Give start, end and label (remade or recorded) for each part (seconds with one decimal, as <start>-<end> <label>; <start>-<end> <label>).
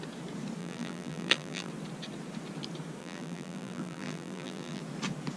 0.0-0.6 recorded; 0.6-1.7 remade; 1.7-3.0 recorded; 3.0-4.8 remade; 4.8-5.4 recorded